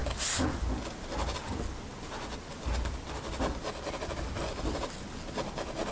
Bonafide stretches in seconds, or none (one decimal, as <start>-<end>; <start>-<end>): 0.0-5.9